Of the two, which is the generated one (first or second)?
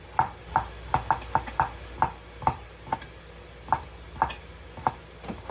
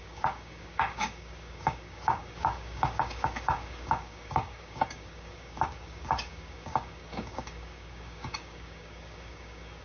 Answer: second